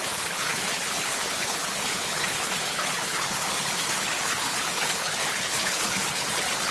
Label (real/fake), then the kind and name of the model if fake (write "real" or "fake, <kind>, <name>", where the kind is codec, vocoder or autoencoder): fake, codec, HILCodec